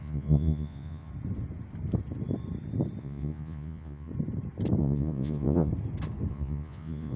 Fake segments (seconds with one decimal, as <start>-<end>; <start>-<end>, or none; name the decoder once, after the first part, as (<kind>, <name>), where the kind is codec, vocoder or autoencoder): 0.0-1.1 (vocoder, Vocos); 3.0-4.1; 4.8-5.7; 6.3-7.2